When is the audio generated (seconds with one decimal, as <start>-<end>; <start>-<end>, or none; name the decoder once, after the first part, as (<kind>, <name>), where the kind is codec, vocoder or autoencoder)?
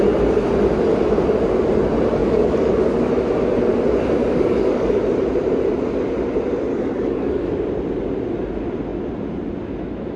2.2-3.1 (codec, DAC); 4.2-5.0; 6.7-7.5